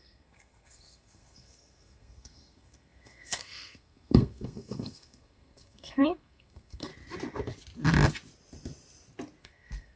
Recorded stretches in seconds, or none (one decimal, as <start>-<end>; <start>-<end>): 6.9-9.4